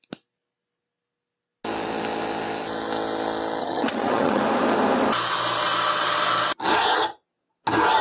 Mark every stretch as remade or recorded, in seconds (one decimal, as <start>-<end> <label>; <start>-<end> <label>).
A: 0.0-3.6 recorded; 3.6-4.4 remade; 4.4-8.0 recorded